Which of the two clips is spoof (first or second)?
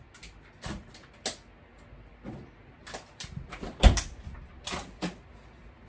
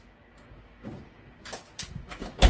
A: second